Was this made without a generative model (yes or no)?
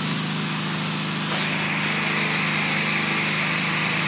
yes